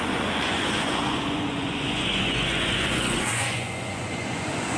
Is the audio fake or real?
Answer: fake